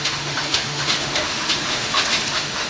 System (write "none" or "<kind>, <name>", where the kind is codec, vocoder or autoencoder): autoencoder, DAC-VAE